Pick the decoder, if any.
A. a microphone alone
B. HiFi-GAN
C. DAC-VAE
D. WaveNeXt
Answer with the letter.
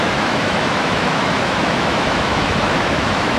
C